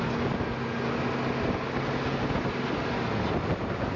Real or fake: real